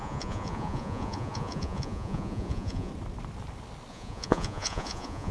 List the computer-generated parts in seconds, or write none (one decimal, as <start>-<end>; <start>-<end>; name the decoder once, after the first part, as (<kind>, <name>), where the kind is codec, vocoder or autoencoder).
0.0-2.9 (vocoder, Vocos); 3.9-5.3